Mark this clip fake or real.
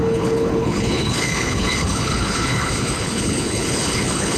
fake